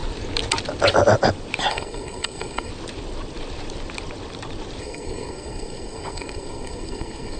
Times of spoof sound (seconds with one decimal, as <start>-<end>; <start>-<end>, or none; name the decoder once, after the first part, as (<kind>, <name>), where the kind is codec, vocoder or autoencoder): 1.7-2.7 (codec, SNAC); 4.8-7.4